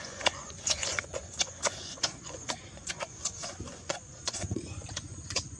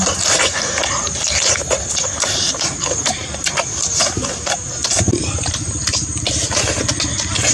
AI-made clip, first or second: first